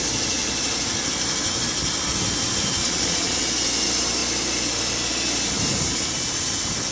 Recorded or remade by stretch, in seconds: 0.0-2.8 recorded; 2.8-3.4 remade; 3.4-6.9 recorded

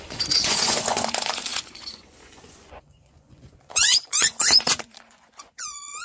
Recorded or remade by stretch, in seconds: 0.0-6.0 remade

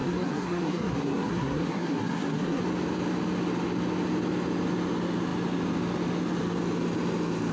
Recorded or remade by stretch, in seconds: 0.0-2.6 remade; 2.6-7.5 recorded

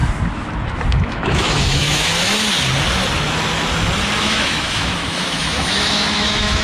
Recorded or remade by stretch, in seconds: 0.0-0.9 recorded; 0.9-2.1 remade; 2.1-4.2 recorded; 4.2-6.6 remade

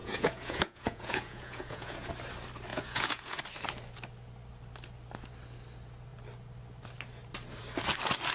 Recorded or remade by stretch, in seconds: 0.0-2.1 remade; 2.1-2.7 recorded; 2.7-3.4 remade; 3.4-8.3 recorded